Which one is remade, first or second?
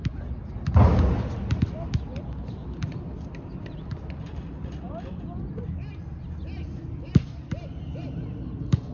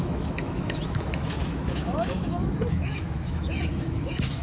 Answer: second